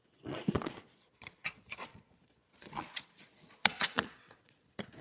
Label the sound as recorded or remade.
remade